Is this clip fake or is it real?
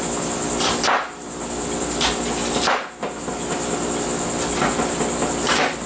real